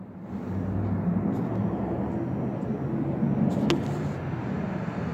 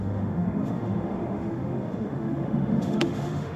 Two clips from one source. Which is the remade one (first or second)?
second